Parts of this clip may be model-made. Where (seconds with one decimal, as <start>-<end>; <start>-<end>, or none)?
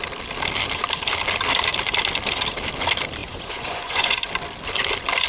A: 3.2-4.3